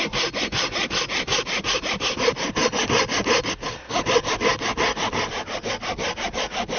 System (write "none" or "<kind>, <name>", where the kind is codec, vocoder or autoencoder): none